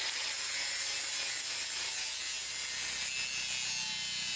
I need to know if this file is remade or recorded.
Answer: recorded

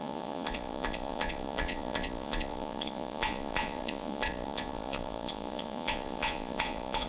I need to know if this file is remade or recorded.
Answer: remade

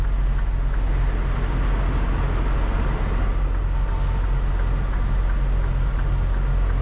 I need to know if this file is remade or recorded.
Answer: recorded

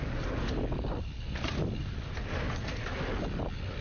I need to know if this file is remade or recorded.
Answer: recorded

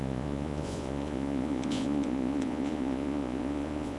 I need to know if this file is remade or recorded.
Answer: remade